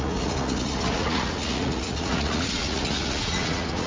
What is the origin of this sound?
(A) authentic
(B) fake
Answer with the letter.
B